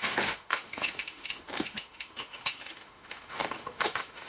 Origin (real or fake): fake